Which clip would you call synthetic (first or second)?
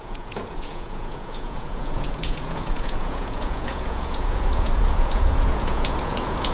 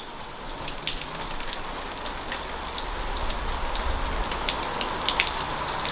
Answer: first